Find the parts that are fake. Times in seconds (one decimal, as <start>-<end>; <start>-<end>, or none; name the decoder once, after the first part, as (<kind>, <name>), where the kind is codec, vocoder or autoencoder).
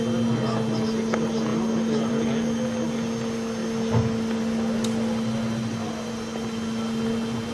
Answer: none